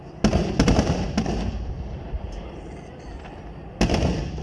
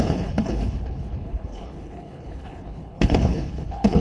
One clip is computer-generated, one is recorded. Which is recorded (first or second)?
first